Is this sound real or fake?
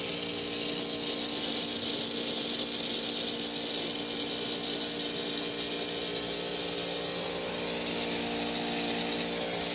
real